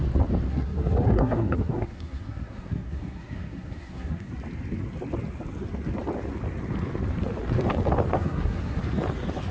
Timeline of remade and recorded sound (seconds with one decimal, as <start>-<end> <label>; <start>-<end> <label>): 0.0-0.5 recorded; 0.5-4.3 remade; 4.3-8.1 recorded; 8.1-8.8 remade; 8.8-9.5 recorded